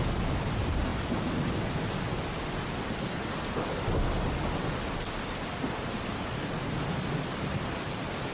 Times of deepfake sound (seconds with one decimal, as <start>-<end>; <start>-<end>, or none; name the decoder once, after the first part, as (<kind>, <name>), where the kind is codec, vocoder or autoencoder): none